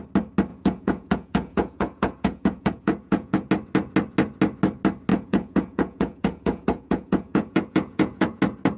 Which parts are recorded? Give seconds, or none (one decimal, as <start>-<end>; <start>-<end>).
0.0-0.5; 3.5-5.1; 8.4-8.8